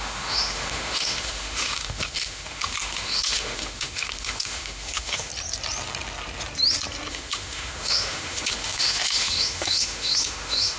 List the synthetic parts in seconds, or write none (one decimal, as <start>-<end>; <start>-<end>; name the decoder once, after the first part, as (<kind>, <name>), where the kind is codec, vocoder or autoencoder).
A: 0.0-5.3 (autoencoder, DAC-VAE); 7.1-10.8